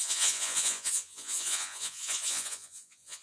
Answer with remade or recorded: remade